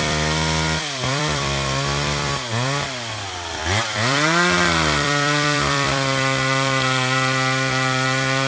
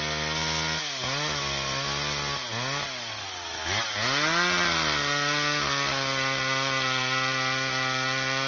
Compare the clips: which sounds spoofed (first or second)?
first